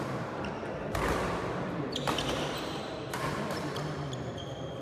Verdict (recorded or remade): remade